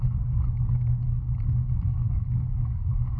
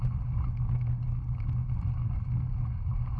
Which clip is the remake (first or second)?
first